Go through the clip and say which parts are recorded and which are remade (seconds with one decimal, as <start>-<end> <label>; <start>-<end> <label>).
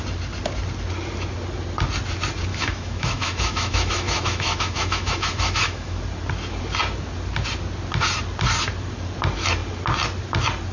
0.0-2.5 recorded; 2.5-6.0 remade; 6.0-10.7 recorded